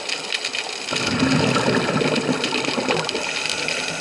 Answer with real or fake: real